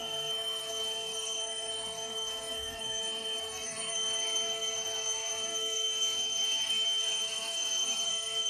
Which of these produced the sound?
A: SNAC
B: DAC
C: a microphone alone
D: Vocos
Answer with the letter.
A